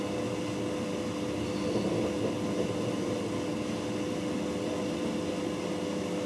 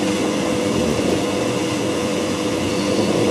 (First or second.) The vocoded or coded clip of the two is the second